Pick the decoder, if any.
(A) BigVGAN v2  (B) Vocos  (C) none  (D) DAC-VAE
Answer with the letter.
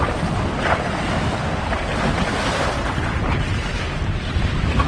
C